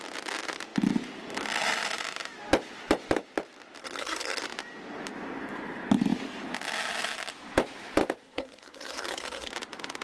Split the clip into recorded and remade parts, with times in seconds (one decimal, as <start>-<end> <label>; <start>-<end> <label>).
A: 0.0-3.8 recorded; 3.8-4.4 remade; 4.4-8.2 recorded; 8.2-9.5 remade; 9.5-10.0 recorded